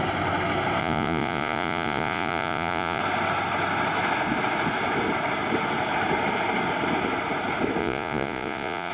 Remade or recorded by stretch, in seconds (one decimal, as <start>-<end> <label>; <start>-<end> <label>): 0.0-0.8 recorded; 0.8-3.0 remade; 3.0-7.8 recorded; 7.8-8.9 remade